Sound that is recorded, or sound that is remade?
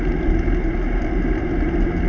recorded